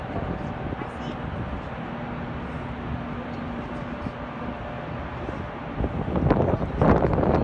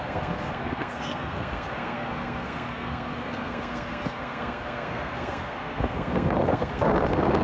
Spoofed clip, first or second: second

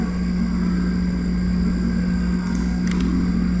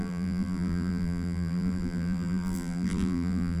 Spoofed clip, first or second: second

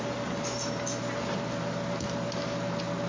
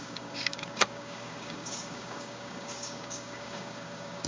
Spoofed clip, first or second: second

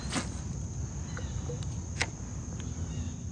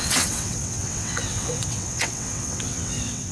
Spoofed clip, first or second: second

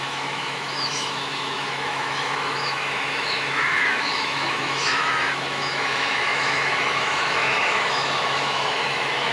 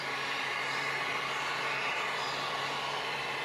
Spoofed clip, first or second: first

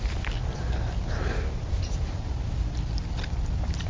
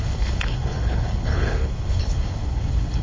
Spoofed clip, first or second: second